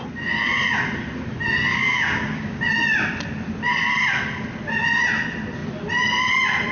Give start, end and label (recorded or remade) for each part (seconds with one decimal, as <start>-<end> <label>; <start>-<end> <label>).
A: 0.0-1.7 recorded; 1.7-2.6 remade; 2.6-6.7 recorded